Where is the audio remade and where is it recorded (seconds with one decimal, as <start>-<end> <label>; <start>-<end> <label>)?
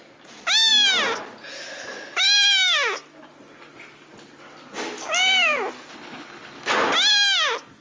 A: 0.0-5.9 recorded; 5.9-6.7 remade; 6.7-7.8 recorded